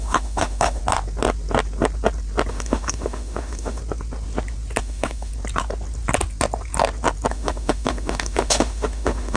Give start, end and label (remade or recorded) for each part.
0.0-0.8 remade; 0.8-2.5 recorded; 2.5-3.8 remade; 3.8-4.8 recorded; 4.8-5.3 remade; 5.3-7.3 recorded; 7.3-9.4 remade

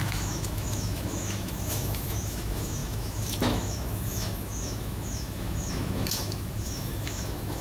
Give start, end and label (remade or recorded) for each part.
0.0-7.6 remade

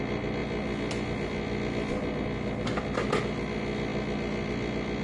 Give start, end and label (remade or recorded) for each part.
0.0-5.0 recorded